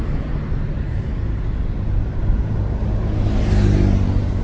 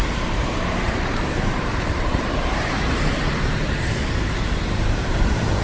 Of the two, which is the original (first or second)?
first